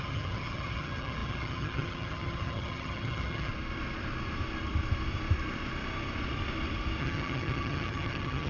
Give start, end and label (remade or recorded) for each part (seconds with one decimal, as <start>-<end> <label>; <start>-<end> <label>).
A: 0.0-3.5 remade; 3.5-7.0 recorded; 7.0-8.5 remade